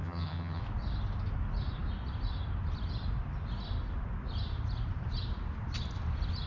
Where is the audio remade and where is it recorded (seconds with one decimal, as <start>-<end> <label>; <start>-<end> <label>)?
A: 0.0-0.6 remade; 0.6-6.5 recorded